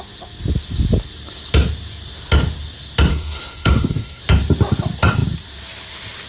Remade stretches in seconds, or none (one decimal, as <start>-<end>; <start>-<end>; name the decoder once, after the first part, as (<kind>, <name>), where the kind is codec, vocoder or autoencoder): 3.1-4.2 (codec, SNAC)